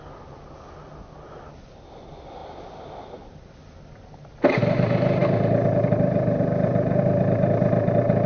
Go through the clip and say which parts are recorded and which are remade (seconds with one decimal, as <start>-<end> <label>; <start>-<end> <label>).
0.0-8.3 recorded